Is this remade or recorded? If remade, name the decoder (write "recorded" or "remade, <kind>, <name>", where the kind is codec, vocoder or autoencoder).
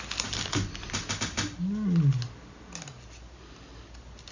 recorded